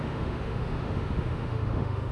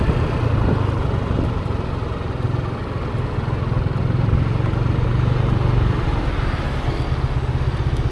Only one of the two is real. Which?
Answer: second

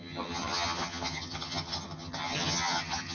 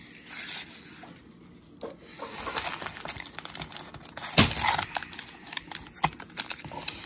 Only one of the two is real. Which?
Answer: second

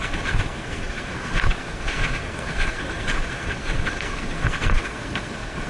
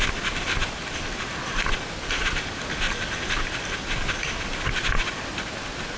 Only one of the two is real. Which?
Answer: second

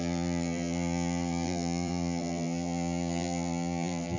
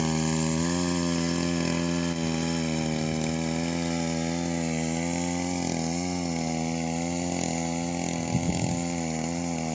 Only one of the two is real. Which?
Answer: second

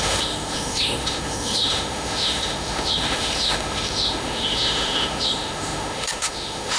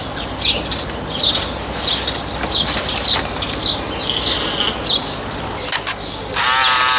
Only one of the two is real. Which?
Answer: second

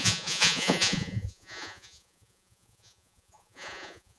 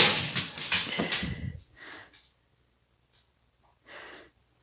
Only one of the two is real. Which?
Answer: second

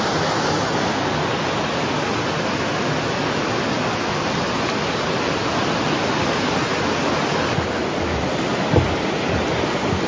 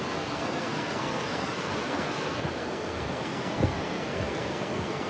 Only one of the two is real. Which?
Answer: first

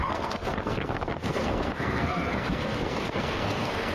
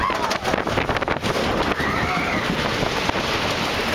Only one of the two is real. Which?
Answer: second